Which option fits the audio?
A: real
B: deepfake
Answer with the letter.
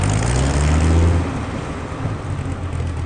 A